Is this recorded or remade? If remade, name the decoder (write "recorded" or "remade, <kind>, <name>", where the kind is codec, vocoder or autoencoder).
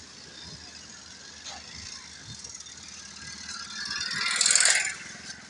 recorded